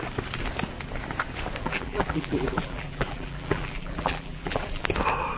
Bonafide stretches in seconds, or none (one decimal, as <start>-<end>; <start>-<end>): 0.0-1.6; 4.8-5.4